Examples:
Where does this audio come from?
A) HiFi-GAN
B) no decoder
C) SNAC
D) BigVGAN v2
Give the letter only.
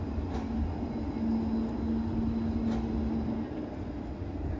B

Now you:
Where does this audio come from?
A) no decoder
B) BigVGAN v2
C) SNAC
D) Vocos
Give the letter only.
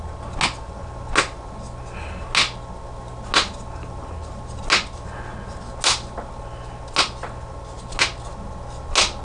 A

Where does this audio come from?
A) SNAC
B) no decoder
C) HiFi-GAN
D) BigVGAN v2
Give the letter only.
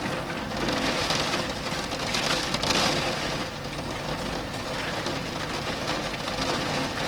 B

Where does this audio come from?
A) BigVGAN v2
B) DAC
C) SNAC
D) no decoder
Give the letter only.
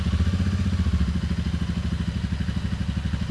D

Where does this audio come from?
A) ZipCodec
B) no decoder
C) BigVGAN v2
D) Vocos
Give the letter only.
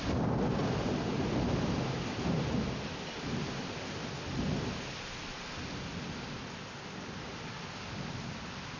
B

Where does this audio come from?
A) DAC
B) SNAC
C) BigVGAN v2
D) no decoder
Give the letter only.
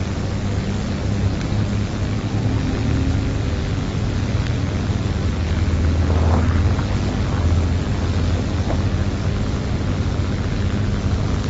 D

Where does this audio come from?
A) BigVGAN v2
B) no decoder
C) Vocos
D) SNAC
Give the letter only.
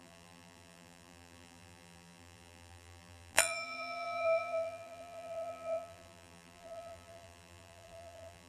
A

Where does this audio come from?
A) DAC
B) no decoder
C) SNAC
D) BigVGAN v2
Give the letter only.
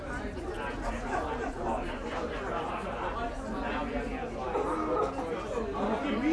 B